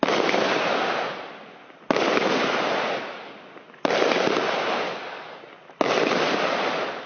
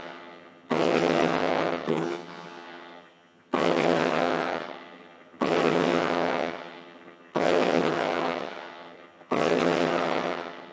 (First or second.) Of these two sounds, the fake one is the second